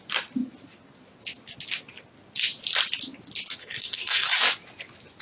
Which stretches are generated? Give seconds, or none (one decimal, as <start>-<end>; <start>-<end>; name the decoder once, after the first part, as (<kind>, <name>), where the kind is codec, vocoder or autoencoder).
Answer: 3.6-4.3 (codec, SNAC)

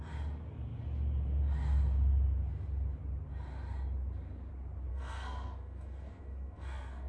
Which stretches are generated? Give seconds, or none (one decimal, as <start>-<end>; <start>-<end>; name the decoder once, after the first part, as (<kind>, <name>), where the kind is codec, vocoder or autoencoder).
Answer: 4.9-7.1 (codec, SNAC)

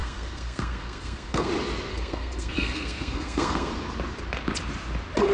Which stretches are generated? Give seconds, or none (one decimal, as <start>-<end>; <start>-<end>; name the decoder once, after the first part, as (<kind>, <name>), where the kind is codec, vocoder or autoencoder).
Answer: 0.0-1.5 (codec, SNAC); 1.9-3.7

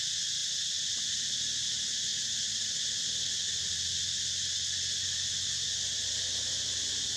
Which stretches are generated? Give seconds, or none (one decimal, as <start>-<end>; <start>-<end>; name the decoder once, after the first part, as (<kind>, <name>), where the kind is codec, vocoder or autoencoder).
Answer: none